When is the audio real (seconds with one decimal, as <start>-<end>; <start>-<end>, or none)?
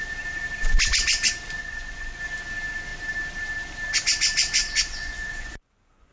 0.0-1.6; 2.2-4.6